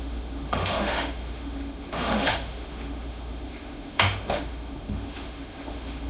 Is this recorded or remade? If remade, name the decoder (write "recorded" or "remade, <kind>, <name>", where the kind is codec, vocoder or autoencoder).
remade, autoencoder, DAC-VAE